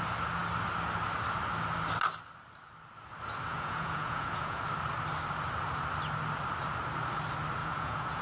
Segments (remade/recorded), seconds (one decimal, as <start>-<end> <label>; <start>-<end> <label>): 0.0-3.5 recorded; 3.5-4.6 remade; 4.6-7.6 recorded; 7.6-8.2 remade